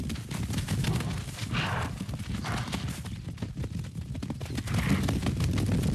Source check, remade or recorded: recorded